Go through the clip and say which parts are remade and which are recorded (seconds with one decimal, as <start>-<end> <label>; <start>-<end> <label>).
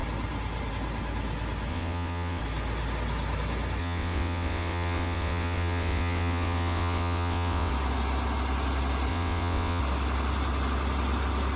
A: 0.0-1.7 recorded; 1.7-2.4 remade; 2.4-3.8 recorded; 3.8-7.7 remade; 7.7-9.1 recorded; 9.1-9.8 remade; 9.8-11.6 recorded